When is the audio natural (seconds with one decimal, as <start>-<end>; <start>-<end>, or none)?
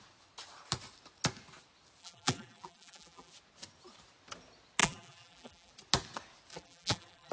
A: 0.0-2.0; 3.3-4.8; 5.7-6.5